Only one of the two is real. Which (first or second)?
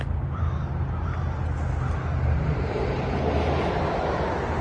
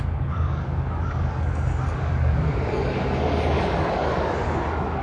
first